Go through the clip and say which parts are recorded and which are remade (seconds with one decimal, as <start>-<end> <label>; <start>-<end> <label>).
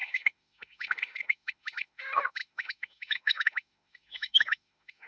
0.0-5.1 remade